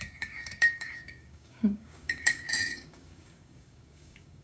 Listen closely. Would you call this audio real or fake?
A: fake